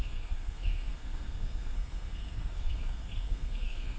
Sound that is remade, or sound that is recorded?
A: remade